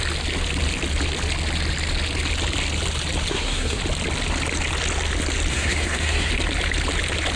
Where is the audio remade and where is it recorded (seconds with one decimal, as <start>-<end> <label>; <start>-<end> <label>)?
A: 0.0-3.3 recorded; 3.3-3.8 remade; 3.8-5.5 recorded; 5.5-6.3 remade; 6.3-7.4 recorded